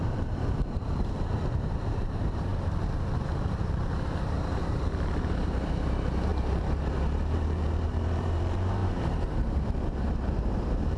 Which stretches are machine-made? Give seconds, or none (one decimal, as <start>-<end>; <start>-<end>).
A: 0.0-2.5; 3.5-11.0